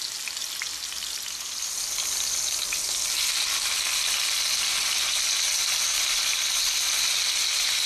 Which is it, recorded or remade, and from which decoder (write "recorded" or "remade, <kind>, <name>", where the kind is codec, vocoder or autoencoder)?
recorded